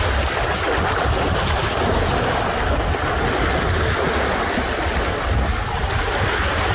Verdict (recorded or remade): recorded